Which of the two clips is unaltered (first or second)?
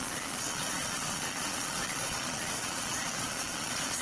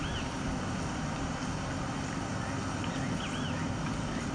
second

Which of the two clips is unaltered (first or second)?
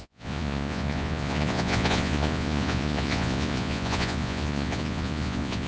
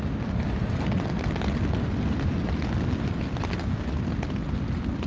second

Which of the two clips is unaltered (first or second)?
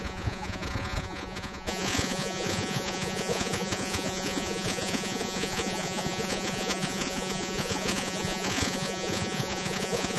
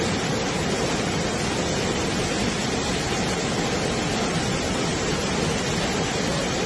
second